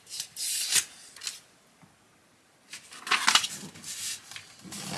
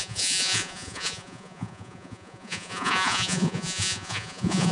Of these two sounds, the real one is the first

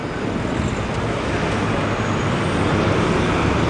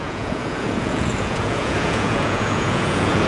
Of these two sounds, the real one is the first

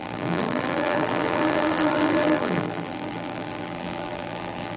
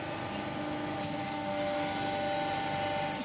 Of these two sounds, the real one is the second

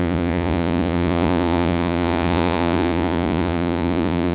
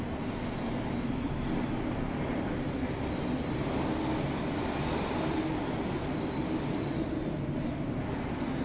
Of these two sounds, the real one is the second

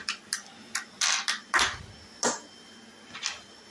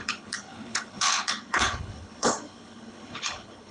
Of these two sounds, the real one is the first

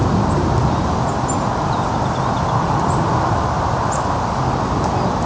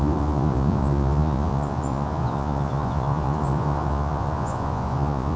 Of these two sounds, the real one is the first